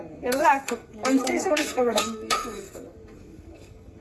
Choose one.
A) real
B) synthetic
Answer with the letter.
B